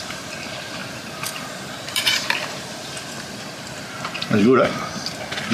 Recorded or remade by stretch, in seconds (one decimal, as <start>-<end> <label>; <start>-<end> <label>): 0.0-0.8 recorded; 0.8-2.9 remade; 2.9-5.5 recorded